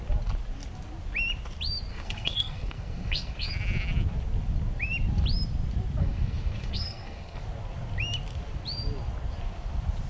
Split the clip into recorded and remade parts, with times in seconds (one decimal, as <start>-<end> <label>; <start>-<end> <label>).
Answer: 0.0-1.9 recorded; 1.9-3.5 remade; 3.5-6.0 recorded; 6.0-7.4 remade; 7.4-10.1 recorded